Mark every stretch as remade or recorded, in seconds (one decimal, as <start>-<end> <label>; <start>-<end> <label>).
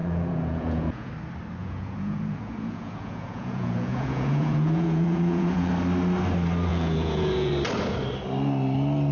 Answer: 0.0-1.1 remade; 1.1-1.6 recorded; 1.6-5.7 remade; 5.7-6.7 recorded; 6.7-7.5 remade; 7.5-9.1 recorded